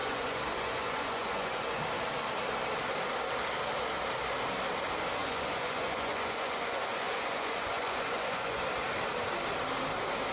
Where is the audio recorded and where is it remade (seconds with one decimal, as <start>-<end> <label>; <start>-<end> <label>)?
0.0-1.8 remade; 1.8-5.2 recorded; 5.2-8.6 remade; 8.6-10.3 recorded